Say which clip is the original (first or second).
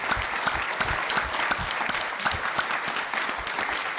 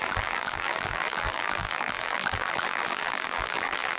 first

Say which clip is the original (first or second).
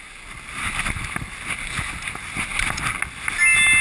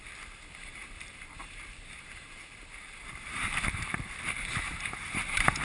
first